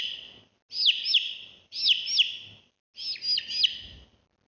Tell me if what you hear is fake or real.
real